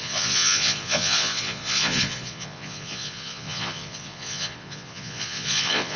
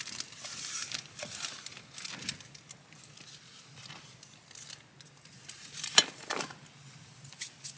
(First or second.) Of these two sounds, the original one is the second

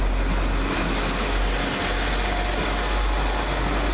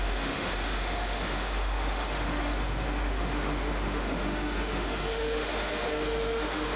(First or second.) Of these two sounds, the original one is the first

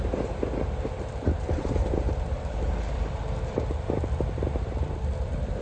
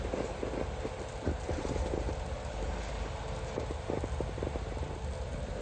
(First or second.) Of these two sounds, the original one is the second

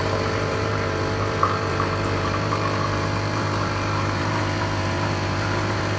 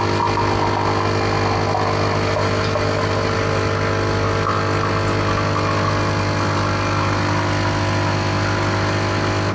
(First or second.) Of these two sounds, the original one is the second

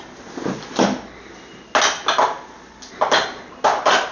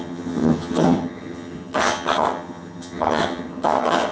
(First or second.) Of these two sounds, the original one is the first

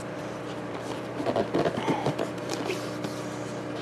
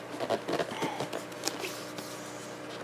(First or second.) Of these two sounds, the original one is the second